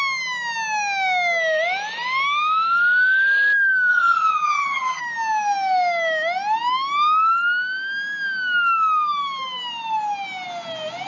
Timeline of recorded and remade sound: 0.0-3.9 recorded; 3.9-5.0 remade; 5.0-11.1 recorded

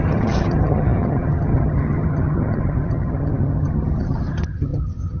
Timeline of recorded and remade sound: 0.0-5.2 remade

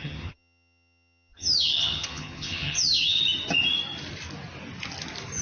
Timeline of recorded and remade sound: 0.0-3.2 remade; 3.2-5.4 recorded

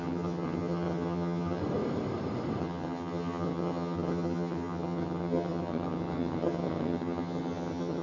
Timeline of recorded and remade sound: 0.0-1.6 remade; 1.6-2.6 recorded; 2.6-8.0 remade

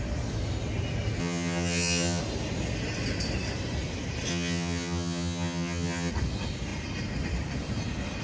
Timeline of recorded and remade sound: 0.0-1.2 recorded; 1.2-2.2 remade; 2.2-4.3 recorded; 4.3-6.1 remade; 6.1-8.2 recorded

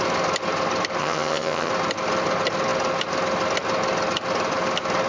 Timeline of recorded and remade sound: 0.0-1.0 recorded; 1.0-1.7 remade; 1.7-5.1 recorded

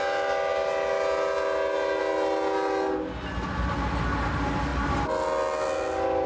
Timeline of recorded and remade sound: 0.0-6.3 recorded

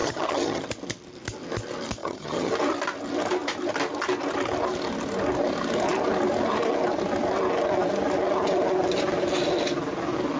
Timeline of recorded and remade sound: 0.0-0.6 remade; 0.6-2.0 recorded; 2.0-2.5 remade; 2.5-10.4 recorded